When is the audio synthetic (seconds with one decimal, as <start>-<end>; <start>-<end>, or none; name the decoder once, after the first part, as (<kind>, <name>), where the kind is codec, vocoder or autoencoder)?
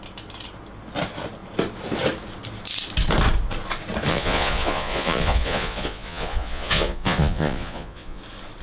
4.1-8.2 (vocoder, Vocos)